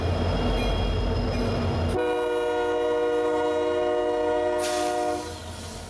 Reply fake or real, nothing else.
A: real